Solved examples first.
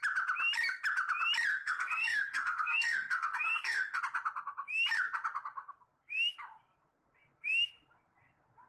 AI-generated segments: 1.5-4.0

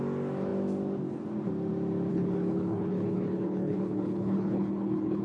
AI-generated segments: 2.1-5.2

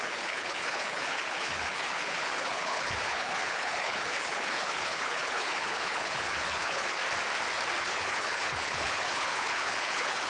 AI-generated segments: 0.0-7.0; 7.8-10.3

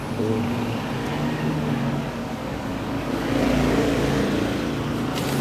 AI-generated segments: 1.0-4.2

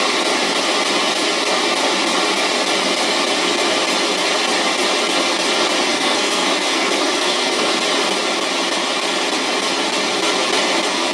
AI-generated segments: 5.9-7.7